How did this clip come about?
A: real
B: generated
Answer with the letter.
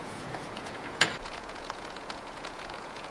B